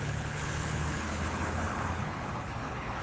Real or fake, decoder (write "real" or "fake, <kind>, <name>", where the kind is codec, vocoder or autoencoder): fake, codec, HILCodec